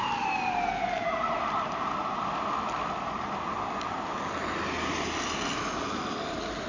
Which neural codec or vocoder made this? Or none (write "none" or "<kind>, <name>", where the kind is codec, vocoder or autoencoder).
none